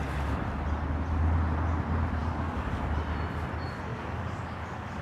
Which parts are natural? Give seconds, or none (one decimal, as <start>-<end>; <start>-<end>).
0.0-2.2; 2.8-3.9